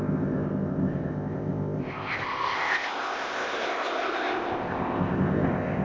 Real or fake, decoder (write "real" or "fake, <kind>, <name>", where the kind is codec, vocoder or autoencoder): fake, codec, ZipCodec